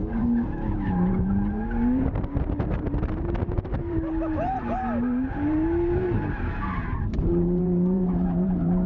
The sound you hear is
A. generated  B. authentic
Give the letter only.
A